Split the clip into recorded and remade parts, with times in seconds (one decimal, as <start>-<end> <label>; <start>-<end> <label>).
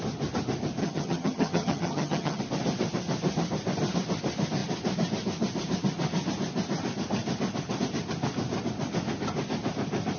0.0-0.8 recorded; 0.8-2.4 remade; 2.4-10.2 recorded